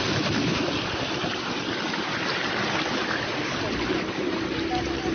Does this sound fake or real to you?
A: real